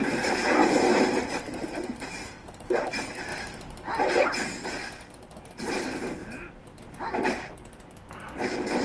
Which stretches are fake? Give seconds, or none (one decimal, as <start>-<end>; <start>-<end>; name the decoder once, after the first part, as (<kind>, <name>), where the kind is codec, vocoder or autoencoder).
0.6-2.9 (vocoder, BigVGAN v2)